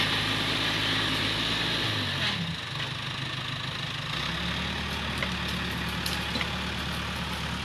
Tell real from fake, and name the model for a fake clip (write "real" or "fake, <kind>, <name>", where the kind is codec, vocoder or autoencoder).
real